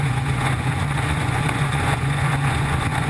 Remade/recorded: remade